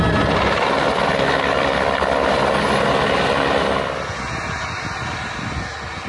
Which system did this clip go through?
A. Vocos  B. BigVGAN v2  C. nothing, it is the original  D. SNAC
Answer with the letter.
C